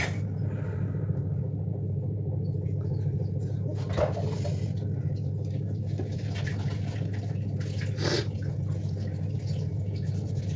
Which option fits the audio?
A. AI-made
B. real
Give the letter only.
B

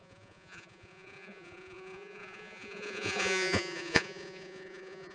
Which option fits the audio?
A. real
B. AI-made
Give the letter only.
B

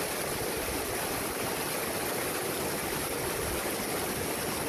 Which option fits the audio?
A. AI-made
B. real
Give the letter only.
B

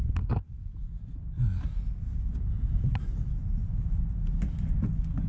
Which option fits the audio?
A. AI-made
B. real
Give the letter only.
B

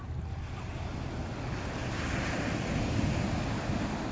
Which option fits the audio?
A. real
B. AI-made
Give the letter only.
A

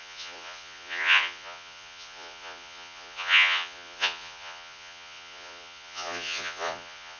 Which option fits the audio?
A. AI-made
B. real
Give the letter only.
A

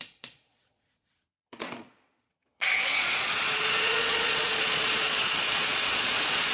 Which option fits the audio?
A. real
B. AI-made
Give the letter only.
B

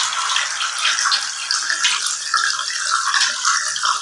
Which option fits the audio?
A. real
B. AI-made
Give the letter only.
A